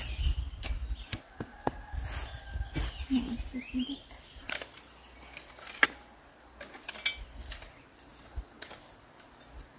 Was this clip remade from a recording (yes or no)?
no